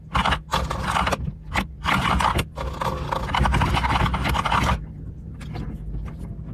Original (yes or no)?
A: yes